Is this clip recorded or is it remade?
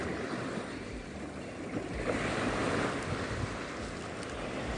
recorded